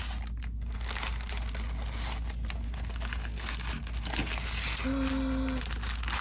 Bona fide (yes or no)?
yes